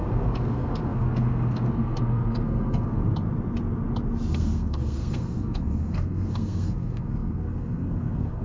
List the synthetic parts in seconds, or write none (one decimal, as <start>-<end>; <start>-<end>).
0.0-3.0; 4.3-8.4